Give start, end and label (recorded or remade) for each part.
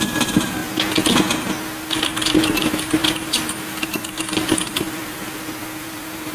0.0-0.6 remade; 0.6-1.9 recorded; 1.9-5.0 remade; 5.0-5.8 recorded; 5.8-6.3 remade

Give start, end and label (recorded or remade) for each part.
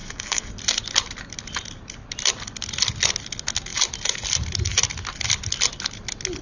0.0-0.5 remade; 0.5-6.4 recorded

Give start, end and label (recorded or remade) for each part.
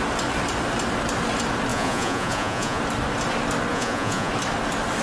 0.0-1.7 recorded; 1.7-2.8 remade; 2.8-3.7 recorded; 3.7-4.3 remade; 4.3-5.0 recorded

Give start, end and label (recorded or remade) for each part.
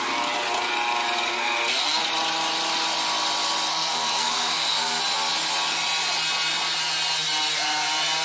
0.0-1.3 recorded; 1.3-2.0 remade; 2.0-3.7 recorded; 3.7-5.0 remade; 5.0-8.2 recorded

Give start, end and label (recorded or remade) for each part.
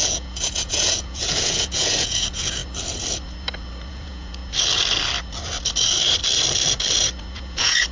0.0-2.6 remade; 2.6-3.9 recorded; 3.9-4.4 remade; 4.4-7.3 recorded; 7.3-7.9 remade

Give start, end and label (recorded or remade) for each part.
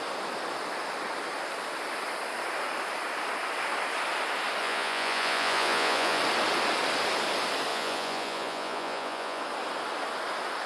0.0-4.6 recorded; 4.6-6.2 remade; 6.2-7.7 recorded; 7.7-9.4 remade; 9.4-10.7 recorded